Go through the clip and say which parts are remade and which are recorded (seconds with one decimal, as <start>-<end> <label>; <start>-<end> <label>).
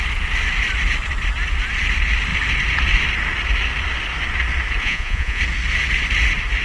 0.0-4.8 recorded; 4.8-5.4 remade; 5.4-6.6 recorded